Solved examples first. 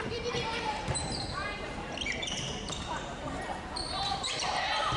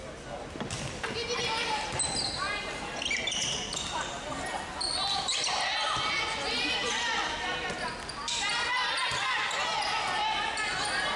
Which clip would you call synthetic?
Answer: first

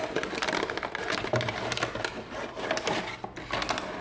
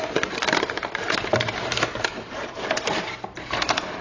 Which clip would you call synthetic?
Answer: second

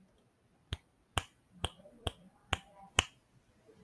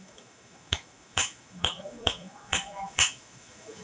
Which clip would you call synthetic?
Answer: second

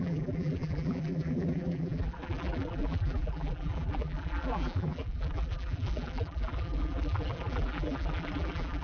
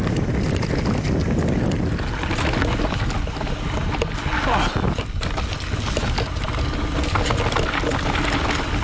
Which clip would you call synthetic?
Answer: first